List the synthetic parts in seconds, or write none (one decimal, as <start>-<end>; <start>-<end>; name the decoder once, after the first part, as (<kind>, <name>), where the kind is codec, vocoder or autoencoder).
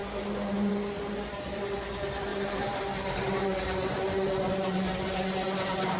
2.3-6.0 (vocoder, BigVGAN v2)